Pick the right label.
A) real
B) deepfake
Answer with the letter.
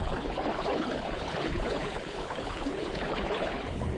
B